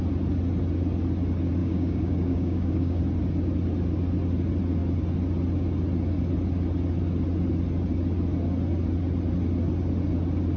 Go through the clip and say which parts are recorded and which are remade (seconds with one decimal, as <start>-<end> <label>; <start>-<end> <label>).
0.0-1.6 recorded; 1.6-3.0 remade; 3.0-10.6 recorded